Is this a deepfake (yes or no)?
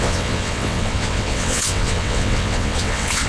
yes